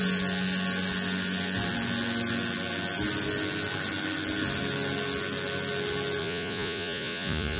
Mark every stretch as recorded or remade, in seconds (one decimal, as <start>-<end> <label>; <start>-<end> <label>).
0.0-6.2 recorded; 6.2-7.6 remade